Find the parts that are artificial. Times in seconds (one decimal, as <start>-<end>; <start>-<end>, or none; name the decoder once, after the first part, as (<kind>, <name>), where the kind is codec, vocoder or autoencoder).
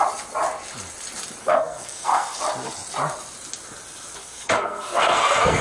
1.4-2.4 (codec, SNAC); 4.2-5.6